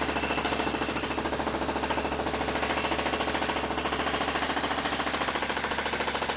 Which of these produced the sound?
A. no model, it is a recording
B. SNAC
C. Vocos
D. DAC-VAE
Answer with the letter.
A